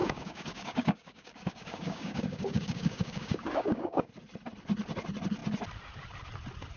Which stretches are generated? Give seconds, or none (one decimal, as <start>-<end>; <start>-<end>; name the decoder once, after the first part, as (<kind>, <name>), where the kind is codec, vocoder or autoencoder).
0.0-4.1 (codec, DAC)